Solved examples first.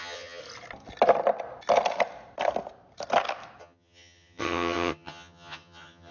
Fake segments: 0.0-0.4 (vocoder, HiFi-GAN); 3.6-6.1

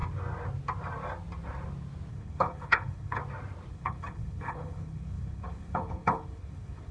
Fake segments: 2.1-3.2 (codec, HILCodec); 3.7-6.9